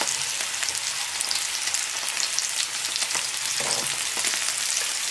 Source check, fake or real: real